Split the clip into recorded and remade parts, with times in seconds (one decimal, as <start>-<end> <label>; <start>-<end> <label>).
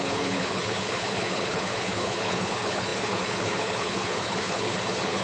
0.0-5.2 remade